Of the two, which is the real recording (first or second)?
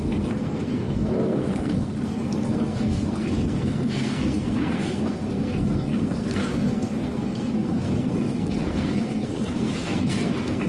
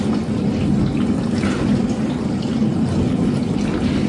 second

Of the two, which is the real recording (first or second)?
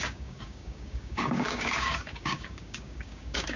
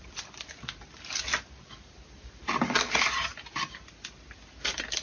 second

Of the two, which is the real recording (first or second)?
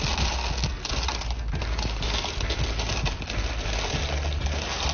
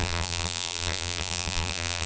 first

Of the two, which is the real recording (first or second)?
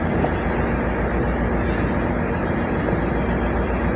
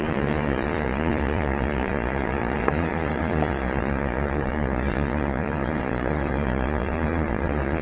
first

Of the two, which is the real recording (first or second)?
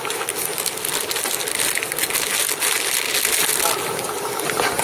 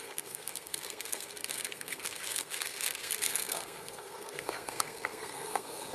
first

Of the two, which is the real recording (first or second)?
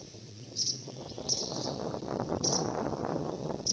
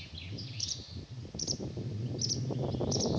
second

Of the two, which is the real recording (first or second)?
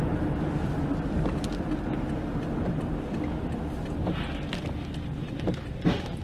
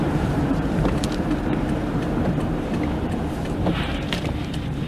first